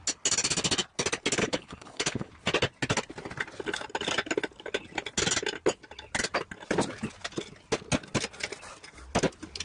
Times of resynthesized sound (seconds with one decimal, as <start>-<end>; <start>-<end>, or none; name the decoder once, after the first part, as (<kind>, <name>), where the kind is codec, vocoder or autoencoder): 1.4-2.3 (codec, HILCodec)